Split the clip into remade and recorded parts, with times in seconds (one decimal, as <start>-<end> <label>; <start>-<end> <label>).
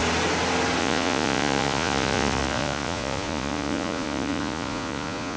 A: 0.0-0.8 recorded; 0.8-5.4 remade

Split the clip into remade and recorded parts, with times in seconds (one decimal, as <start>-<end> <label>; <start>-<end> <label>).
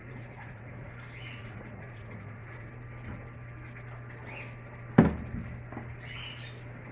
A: 0.0-0.9 remade; 0.9-1.4 recorded; 1.4-2.7 remade; 2.7-6.9 recorded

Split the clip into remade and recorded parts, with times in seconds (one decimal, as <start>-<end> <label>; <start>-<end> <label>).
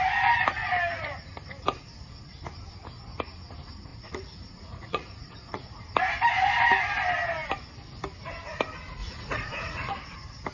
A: 0.0-3.9 recorded; 3.9-5.8 remade; 5.8-9.0 recorded; 9.0-9.9 remade; 9.9-10.5 recorded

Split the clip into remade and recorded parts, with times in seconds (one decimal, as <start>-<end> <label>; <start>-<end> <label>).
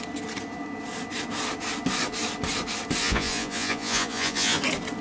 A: 0.0-3.0 recorded; 3.0-4.6 remade; 4.6-5.0 recorded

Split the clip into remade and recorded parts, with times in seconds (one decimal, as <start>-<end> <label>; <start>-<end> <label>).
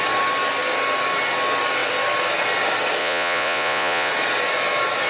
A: 0.0-3.0 recorded; 3.0-4.1 remade; 4.1-5.1 recorded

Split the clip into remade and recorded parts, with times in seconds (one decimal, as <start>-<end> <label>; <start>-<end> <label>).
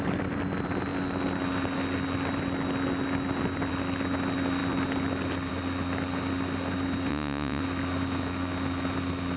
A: 0.0-7.1 recorded; 7.1-7.6 remade; 7.6-9.4 recorded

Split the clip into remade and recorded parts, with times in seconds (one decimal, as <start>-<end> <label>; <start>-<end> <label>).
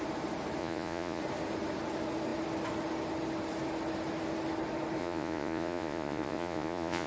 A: 0.0-0.6 recorded; 0.6-1.2 remade; 1.2-5.0 recorded; 5.0-7.1 remade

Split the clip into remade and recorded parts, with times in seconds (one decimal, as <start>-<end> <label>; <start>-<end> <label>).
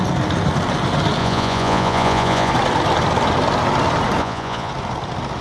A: 0.0-1.2 recorded; 1.2-2.5 remade; 2.5-4.2 recorded; 4.2-4.7 remade; 4.7-5.4 recorded